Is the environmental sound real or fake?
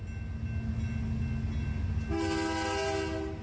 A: real